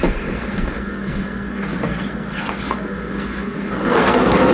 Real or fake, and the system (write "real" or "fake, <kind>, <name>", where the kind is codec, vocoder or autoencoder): fake, codec, SNAC